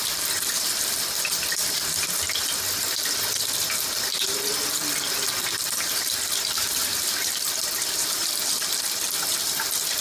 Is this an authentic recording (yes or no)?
no